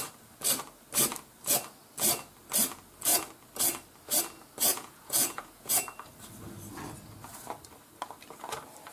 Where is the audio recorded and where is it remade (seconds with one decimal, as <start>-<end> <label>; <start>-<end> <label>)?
0.0-4.7 recorded; 4.7-5.7 remade; 5.7-8.9 recorded